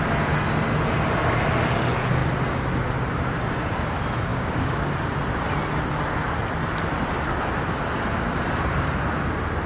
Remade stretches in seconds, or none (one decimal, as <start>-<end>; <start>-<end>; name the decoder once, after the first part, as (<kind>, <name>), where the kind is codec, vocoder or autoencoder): 4.3-4.8 (codec, DAC)